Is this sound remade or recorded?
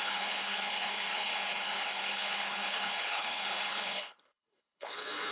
remade